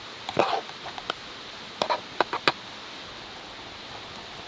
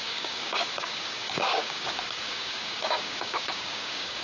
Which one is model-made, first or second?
second